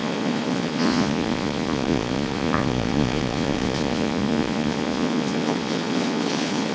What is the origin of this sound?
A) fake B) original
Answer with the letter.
A